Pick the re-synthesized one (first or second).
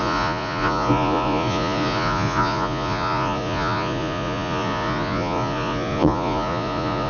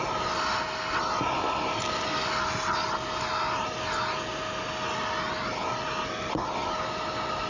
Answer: first